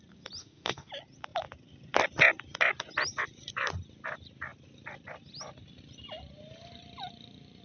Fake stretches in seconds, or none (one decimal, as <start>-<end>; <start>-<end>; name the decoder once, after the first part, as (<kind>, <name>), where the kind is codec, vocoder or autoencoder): 0.4-0.9 (autoencoder, DAC-VAE)